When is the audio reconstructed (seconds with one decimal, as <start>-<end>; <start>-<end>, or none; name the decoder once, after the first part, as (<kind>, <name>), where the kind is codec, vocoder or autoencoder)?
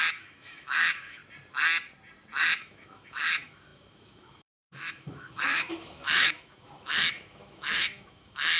0.0-1.2 (autoencoder, DAC-VAE); 2.4-8.6